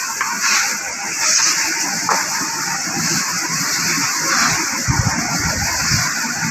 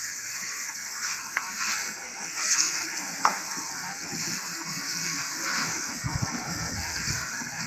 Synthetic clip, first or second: second